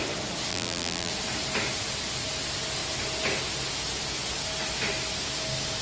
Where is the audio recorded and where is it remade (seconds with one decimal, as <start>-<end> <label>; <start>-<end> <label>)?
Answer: 0.0-0.5 recorded; 0.5-1.1 remade; 1.1-5.8 recorded